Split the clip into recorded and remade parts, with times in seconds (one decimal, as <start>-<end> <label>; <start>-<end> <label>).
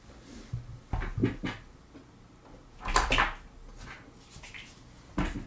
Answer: 0.0-5.5 recorded